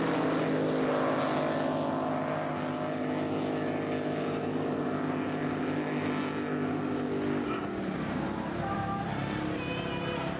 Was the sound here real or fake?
real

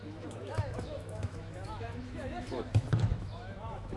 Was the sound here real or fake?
fake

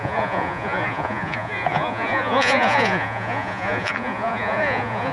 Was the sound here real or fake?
fake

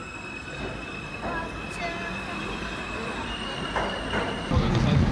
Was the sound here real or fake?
real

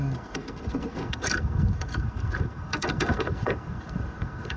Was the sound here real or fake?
fake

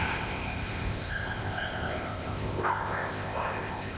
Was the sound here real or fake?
fake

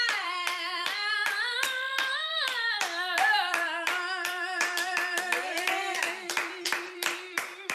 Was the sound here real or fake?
fake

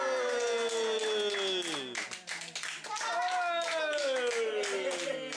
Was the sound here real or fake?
real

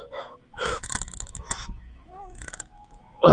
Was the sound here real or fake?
fake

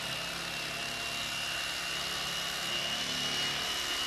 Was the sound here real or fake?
real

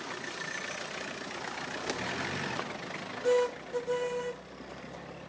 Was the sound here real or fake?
real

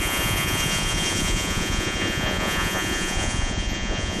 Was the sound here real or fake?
fake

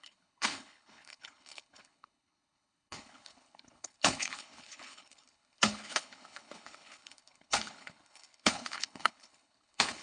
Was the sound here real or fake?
fake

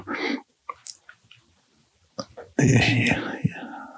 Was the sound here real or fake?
real